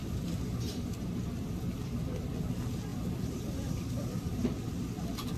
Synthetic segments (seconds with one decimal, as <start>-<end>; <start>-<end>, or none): 0.0-2.4; 2.9-4.8